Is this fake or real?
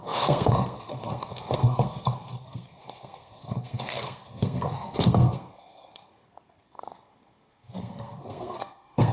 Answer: fake